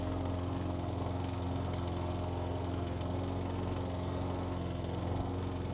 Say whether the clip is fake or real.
fake